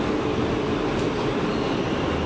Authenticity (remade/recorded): recorded